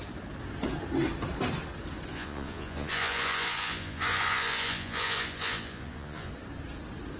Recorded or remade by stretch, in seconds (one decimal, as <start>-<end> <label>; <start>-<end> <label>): 0.0-2.1 recorded; 2.1-6.3 remade; 6.3-7.2 recorded